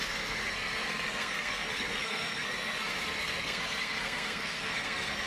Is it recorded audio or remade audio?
remade